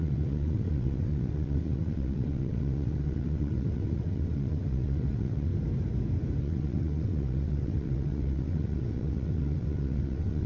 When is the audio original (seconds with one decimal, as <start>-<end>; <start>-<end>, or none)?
5.5-6.4